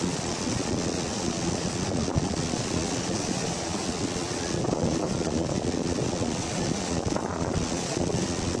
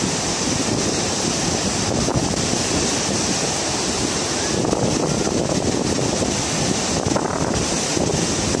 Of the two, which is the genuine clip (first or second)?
second